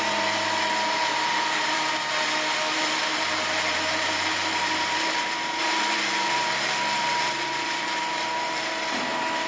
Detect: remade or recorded remade